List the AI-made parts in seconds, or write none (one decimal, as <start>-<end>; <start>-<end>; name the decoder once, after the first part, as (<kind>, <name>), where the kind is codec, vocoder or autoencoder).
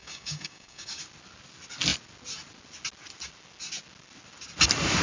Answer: 0.0-1.0 (codec, DAC)